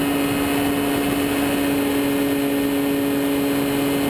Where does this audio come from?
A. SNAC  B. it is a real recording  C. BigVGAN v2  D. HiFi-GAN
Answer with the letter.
B